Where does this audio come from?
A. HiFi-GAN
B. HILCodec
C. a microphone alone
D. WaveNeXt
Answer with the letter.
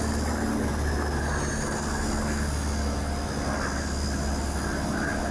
C